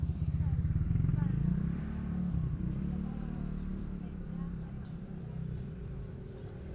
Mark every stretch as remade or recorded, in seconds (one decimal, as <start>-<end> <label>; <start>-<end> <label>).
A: 0.0-6.7 remade